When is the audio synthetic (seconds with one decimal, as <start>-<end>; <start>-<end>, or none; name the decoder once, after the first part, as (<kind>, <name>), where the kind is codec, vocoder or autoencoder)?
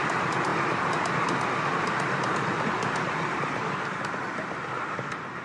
none